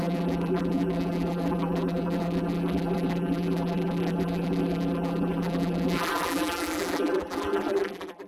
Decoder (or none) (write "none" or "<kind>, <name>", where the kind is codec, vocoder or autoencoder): vocoder, BigVGAN v2